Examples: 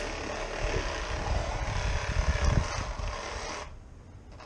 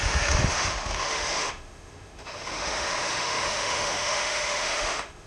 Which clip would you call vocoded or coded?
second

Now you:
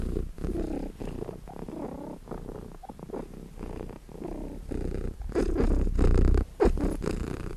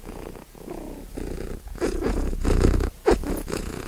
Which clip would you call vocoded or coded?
second